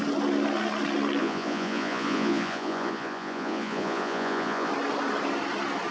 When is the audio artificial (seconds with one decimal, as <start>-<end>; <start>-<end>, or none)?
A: 1.2-4.7